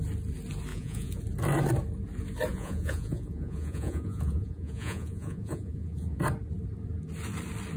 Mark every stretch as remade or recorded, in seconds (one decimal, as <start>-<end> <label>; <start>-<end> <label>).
0.0-0.7 recorded; 0.7-1.2 remade; 1.2-2.5 recorded; 2.5-6.2 remade; 6.2-7.8 recorded